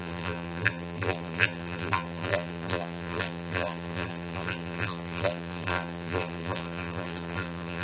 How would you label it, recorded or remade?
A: remade